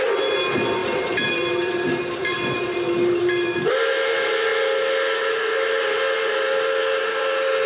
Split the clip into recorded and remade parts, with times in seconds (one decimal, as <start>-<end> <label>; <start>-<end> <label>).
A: 0.0-0.8 recorded; 0.8-3.7 remade; 3.7-7.7 recorded